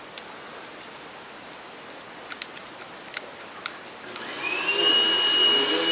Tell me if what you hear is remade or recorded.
recorded